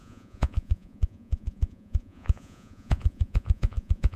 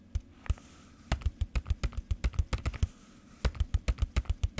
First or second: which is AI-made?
first